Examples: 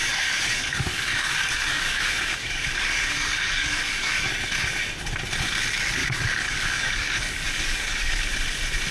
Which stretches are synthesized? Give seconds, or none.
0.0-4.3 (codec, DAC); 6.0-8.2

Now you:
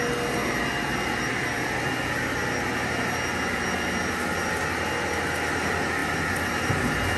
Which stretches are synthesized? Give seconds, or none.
none

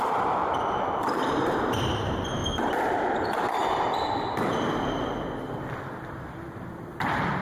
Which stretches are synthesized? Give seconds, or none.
0.0-2.4 (vocoder, BigVGAN v2); 2.9-3.6; 6.1-7.4

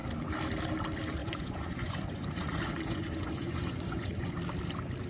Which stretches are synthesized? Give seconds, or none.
1.2-4.3 (vocoder, Vocos)

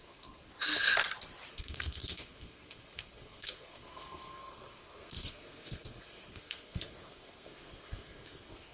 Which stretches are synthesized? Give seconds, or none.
0.0-0.5 (codec, SNAC); 1.5-8.7